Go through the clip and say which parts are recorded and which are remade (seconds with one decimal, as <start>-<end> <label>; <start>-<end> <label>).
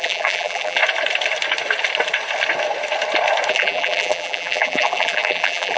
0.0-0.8 remade; 0.8-3.5 recorded; 3.5-5.8 remade